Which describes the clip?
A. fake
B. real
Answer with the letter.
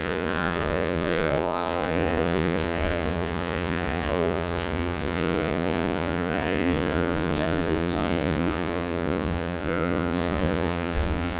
A